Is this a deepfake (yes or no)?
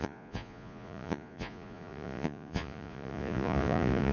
yes